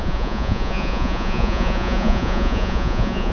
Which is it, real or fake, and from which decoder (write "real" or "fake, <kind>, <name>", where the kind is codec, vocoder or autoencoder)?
fake, vocoder, Vocos